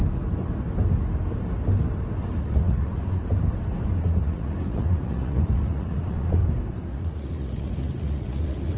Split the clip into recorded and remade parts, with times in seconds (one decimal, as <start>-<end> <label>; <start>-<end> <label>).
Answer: 0.0-2.4 recorded; 2.4-3.2 remade; 3.2-4.0 recorded; 4.0-6.4 remade; 6.4-6.9 recorded; 6.9-8.8 remade